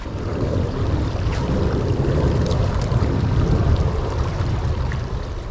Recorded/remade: remade